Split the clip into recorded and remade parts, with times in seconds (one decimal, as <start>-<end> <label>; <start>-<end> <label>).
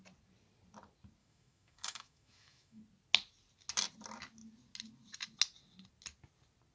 0.0-1.2 recorded; 1.2-2.8 remade; 2.8-6.7 recorded